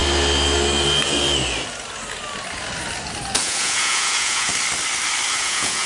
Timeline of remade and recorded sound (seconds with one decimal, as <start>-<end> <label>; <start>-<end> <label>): 0.0-3.4 recorded; 3.4-4.5 remade; 4.5-5.3 recorded; 5.3-5.9 remade